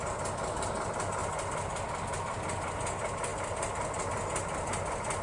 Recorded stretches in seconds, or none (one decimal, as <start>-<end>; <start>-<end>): 0.0-5.2